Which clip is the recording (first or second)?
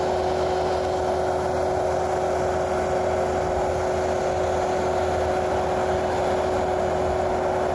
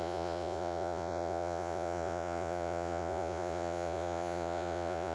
first